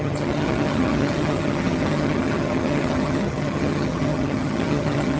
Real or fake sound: fake